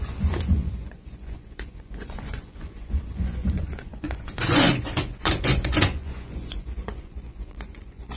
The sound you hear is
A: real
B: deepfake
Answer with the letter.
B